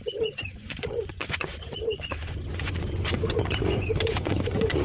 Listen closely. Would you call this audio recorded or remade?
remade